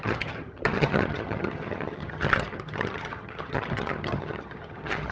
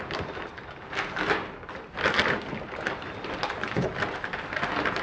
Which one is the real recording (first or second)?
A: second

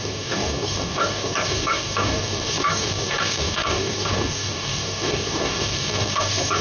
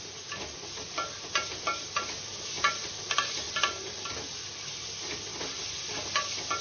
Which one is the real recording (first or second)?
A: second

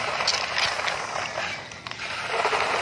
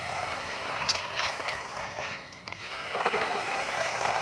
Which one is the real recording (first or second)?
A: first